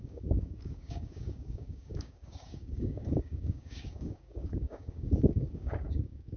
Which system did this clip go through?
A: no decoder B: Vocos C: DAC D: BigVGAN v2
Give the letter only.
C